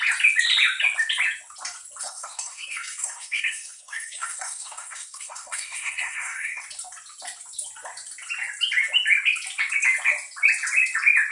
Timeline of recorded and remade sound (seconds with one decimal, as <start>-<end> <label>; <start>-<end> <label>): 0.0-2.0 recorded; 2.0-6.6 remade; 6.6-11.3 recorded